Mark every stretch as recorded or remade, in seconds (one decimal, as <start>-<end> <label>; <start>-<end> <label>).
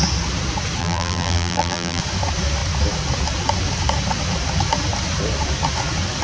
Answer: 0.0-0.8 recorded; 0.8-2.0 remade; 2.0-6.2 recorded